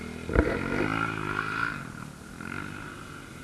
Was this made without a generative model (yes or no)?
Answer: yes